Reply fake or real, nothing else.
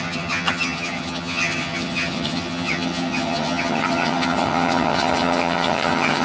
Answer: fake